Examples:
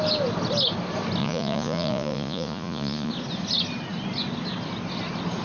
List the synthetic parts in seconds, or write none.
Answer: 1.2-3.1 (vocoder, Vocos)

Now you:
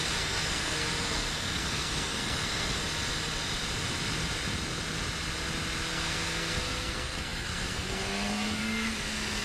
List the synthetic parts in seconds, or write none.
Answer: 0.0-2.8 (codec, SNAC); 5.9-9.4

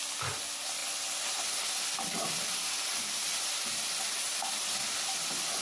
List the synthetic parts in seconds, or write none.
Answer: none

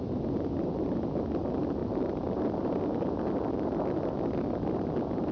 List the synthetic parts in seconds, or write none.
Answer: 1.8-2.8 (vocoder, BigVGAN v2)

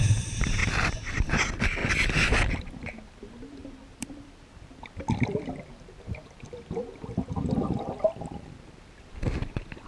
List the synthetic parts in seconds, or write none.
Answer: 0.6-1.3 (vocoder, BigVGAN v2); 3.6-6.6